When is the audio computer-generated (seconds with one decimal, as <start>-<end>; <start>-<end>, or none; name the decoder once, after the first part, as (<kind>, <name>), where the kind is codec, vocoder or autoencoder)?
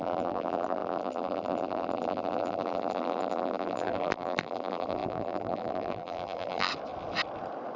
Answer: 0.0-6.7 (vocoder, BigVGAN v2)